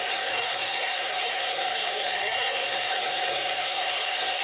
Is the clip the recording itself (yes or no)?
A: no